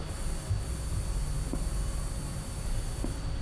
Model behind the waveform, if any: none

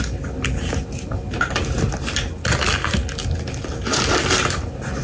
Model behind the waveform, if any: none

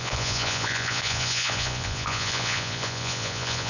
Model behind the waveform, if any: vocoder, Vocos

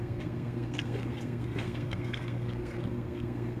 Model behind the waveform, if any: codec, SNAC